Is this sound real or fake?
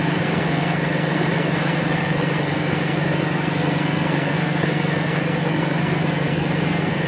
fake